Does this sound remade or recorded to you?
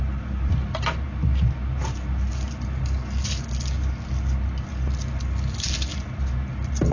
recorded